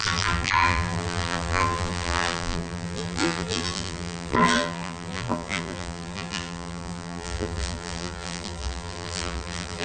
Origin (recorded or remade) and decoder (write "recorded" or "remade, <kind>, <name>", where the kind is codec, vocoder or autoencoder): remade, vocoder, BigVGAN v2